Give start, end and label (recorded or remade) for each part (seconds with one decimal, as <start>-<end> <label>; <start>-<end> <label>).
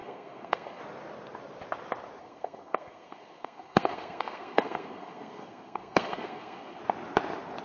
0.0-0.8 remade; 0.8-2.2 recorded; 2.2-6.8 remade; 6.8-7.6 recorded